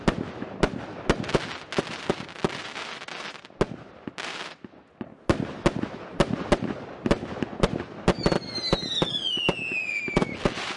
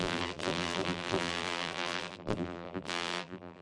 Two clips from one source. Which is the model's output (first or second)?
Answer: second